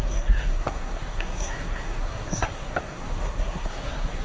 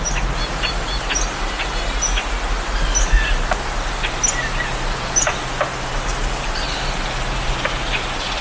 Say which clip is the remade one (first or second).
first